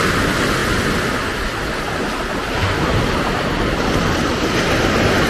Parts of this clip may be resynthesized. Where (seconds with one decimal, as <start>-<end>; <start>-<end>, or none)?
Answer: none